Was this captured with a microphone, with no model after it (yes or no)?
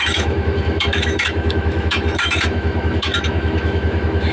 no